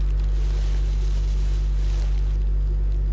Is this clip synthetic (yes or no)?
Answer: no